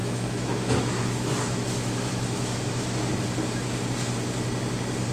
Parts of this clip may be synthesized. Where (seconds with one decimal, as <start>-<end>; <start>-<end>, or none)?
0.0-3.1